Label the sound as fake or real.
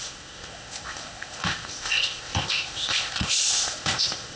fake